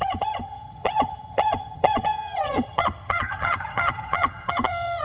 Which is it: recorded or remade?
remade